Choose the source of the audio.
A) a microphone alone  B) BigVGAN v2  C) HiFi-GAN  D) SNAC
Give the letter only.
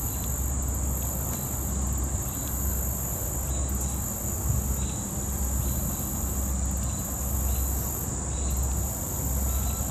A